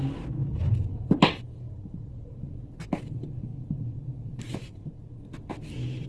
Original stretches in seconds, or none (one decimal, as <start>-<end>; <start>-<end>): none